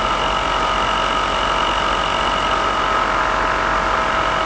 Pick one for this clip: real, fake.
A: real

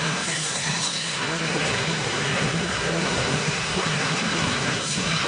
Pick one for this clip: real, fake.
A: fake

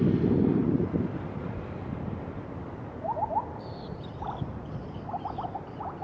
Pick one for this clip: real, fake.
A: real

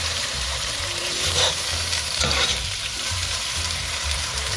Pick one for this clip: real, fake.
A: fake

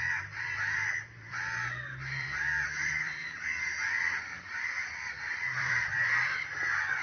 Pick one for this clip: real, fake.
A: fake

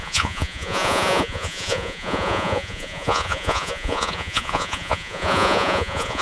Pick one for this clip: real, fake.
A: fake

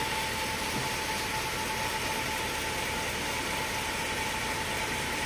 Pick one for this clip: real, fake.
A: real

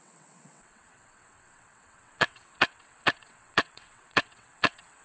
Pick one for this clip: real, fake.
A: fake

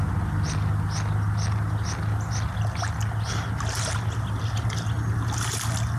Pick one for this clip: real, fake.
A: real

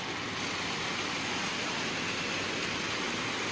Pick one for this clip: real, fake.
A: real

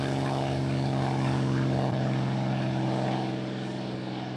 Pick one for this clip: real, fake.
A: fake